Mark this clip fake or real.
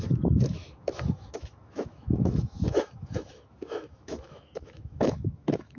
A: fake